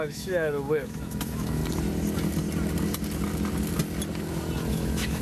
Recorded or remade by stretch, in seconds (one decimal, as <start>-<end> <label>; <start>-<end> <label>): 0.0-1.6 remade; 1.6-4.7 recorded; 4.7-5.2 remade